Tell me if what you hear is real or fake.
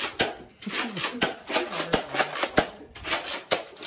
real